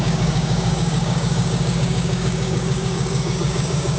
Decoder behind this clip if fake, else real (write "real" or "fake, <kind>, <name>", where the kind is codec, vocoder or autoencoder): fake, codec, DAC